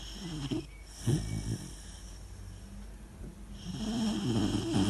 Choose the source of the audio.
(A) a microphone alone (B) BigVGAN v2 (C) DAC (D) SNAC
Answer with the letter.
A